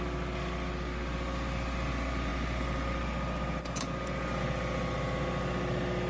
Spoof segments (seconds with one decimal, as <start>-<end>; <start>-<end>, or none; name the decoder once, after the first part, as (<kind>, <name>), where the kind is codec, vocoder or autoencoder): none